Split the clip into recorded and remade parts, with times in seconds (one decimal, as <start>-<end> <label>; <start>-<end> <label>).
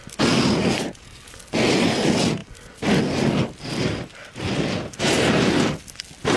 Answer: 0.0-6.4 recorded